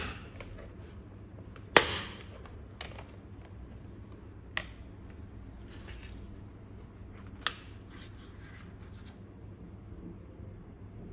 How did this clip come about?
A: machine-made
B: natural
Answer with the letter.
B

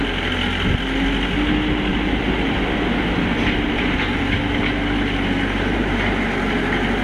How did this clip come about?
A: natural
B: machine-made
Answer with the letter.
A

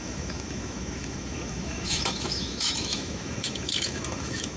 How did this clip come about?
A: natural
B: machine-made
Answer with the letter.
B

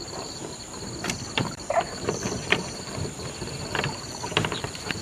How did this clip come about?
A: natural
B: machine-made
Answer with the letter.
B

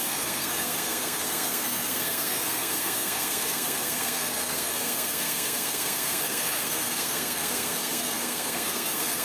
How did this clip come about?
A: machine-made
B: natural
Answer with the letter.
A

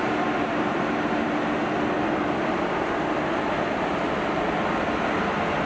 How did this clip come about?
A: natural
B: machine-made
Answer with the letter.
A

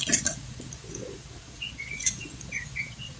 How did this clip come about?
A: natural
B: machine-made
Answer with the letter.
B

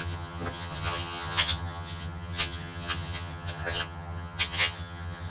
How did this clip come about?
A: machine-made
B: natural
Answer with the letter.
A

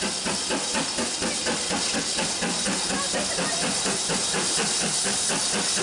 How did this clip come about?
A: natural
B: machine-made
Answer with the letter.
A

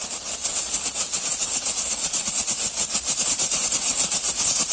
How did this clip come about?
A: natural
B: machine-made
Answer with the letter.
A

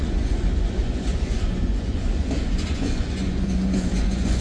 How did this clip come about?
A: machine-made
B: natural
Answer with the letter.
A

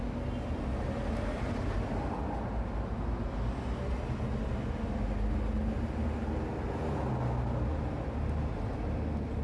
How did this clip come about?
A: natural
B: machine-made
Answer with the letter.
A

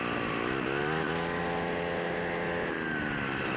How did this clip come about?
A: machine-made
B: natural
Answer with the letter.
B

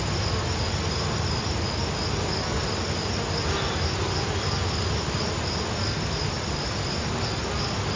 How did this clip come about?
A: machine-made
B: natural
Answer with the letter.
B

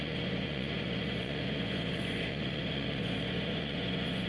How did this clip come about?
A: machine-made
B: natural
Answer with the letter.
A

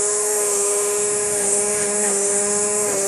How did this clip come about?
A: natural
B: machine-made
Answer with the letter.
B